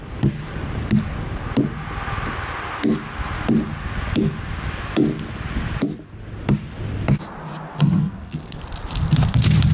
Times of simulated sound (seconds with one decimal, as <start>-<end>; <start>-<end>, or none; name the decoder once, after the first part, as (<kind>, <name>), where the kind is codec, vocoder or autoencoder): 8.0-8.6 (codec, SNAC)